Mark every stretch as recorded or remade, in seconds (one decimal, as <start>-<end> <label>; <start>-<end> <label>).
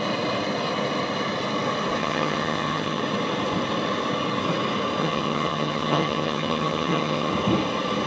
0.0-2.0 recorded; 2.0-3.0 remade; 3.0-5.0 recorded; 5.0-7.3 remade; 7.3-8.1 recorded